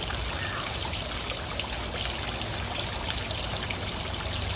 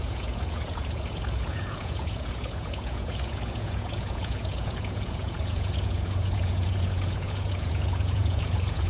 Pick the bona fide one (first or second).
first